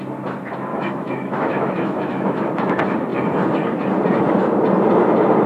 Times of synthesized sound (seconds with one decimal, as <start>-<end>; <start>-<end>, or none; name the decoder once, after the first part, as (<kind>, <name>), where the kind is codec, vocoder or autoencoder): 0.7-2.4 (autoencoder, DAC-VAE)